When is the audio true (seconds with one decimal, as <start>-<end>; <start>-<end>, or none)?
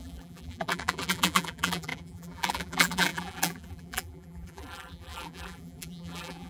none